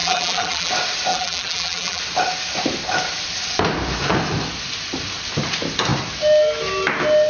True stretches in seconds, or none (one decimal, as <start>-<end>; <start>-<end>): 0.7-1.1; 2.0-7.3